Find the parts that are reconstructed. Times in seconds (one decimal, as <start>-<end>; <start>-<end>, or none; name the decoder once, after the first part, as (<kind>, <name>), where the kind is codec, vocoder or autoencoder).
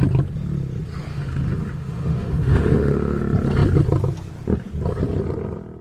1.1-3.2 (autoencoder, DAC-VAE)